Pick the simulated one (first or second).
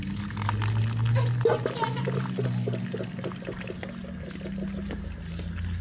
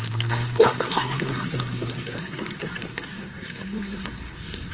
second